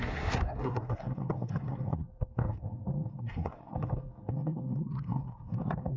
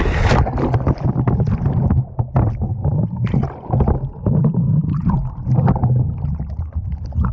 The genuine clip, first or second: second